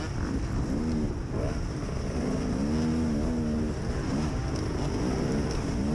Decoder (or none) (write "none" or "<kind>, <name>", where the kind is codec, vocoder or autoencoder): none